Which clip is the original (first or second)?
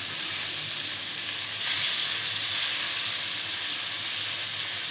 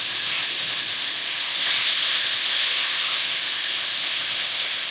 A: first